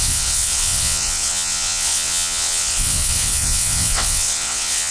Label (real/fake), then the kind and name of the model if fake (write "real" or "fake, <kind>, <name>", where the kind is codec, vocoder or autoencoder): fake, vocoder, WaveNeXt